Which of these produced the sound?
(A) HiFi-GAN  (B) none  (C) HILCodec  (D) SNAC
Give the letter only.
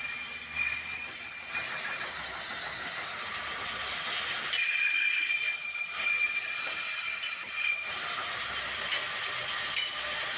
B